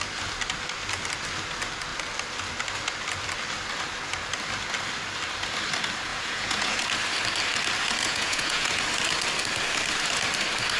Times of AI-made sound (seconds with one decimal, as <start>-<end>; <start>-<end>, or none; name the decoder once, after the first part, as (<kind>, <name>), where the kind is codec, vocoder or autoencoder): 6.1-6.8 (vocoder, Vocos); 8.0-8.8